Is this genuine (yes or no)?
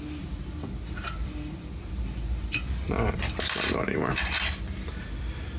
no